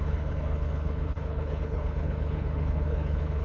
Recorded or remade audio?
remade